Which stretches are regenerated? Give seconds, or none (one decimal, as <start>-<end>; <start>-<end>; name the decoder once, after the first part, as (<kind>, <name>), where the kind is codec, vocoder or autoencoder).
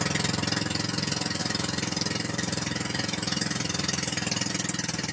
1.4-4.5 (vocoder, BigVGAN v2)